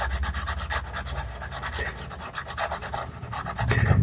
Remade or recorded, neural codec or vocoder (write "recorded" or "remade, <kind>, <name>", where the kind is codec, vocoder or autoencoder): recorded